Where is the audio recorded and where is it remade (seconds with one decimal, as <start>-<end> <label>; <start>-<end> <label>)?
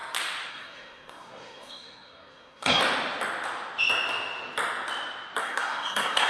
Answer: 0.0-0.5 recorded; 0.5-2.8 remade; 2.8-5.4 recorded; 5.4-6.3 remade